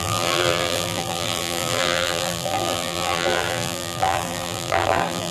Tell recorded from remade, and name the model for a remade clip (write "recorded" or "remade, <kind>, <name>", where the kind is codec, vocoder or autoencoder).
remade, vocoder, BigVGAN v2